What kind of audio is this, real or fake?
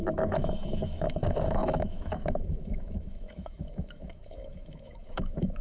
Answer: fake